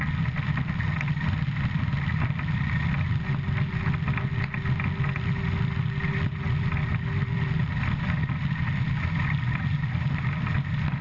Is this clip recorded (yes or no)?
yes